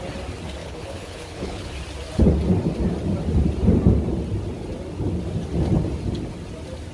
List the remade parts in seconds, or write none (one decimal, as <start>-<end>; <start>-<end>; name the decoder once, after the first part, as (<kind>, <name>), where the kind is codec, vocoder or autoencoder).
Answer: 0.6-1.7 (codec, HILCodec)